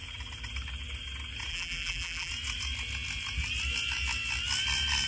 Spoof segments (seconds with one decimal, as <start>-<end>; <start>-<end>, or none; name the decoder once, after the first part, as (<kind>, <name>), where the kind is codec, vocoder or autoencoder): 1.5-2.3 (vocoder, BigVGAN v2)